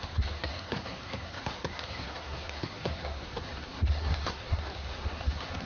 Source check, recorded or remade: remade